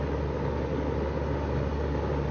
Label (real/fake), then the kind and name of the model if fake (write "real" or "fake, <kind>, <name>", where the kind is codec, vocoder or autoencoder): real